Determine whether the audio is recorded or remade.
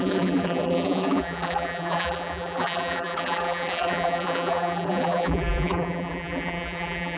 remade